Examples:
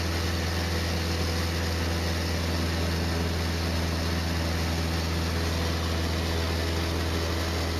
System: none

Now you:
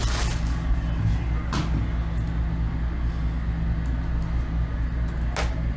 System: none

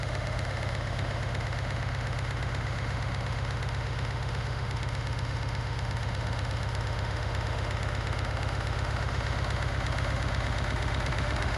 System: autoencoder, DAC-VAE